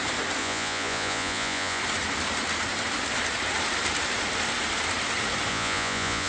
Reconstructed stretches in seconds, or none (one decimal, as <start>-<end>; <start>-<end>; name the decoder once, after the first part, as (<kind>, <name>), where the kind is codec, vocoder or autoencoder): 0.4-1.8 (vocoder, Vocos); 5.5-6.3